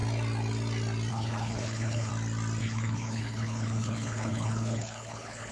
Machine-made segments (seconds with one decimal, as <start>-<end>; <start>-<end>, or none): 1.1-2.1; 2.6-5.5